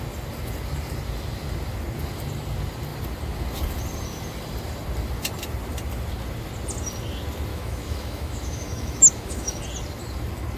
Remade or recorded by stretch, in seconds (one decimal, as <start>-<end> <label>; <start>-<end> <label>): 0.0-7.5 recorded; 7.5-9.6 remade; 9.6-10.6 recorded